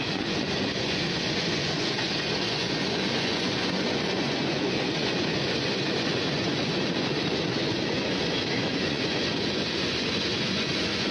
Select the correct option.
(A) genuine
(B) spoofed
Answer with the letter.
B